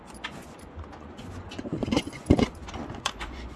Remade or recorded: remade